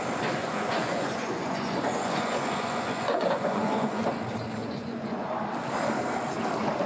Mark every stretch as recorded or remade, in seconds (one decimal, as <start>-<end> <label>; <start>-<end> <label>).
0.0-0.4 recorded; 0.4-4.0 remade; 4.0-4.6 recorded; 4.6-5.3 remade; 5.3-6.9 recorded